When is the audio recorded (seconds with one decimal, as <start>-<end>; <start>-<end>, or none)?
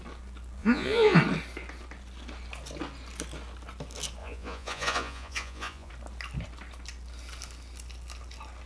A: 0.0-0.6; 1.2-4.2; 5.9-8.7